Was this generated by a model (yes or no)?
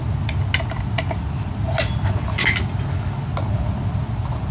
no